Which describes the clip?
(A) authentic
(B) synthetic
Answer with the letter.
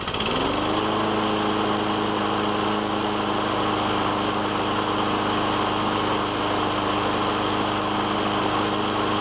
A